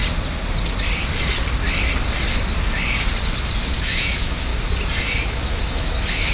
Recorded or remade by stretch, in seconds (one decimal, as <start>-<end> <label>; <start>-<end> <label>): 0.0-3.8 recorded; 3.8-4.5 remade; 4.5-5.3 recorded; 5.3-6.3 remade